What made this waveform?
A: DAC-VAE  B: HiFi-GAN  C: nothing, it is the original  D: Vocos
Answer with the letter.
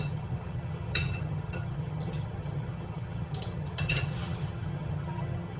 B